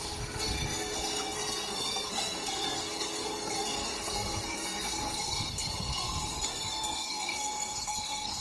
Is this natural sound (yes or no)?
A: no